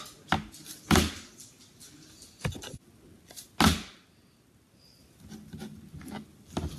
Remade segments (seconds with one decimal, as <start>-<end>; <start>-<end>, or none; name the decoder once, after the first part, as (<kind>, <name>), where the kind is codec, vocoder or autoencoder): none